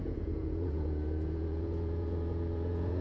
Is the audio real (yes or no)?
no